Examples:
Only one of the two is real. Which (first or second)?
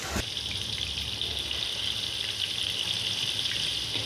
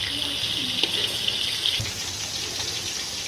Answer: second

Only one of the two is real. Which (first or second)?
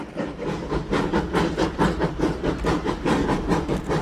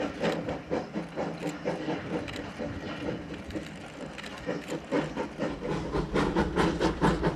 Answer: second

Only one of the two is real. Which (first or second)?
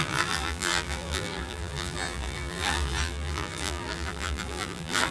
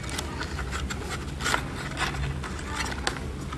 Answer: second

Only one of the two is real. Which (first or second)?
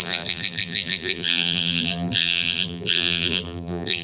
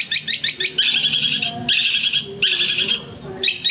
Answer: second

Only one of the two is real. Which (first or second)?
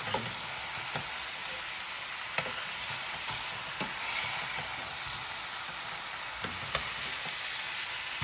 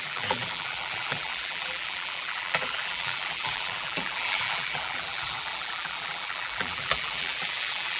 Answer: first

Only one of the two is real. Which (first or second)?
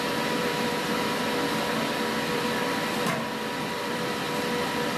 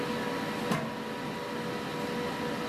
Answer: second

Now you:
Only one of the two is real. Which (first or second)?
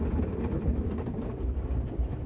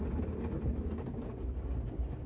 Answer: second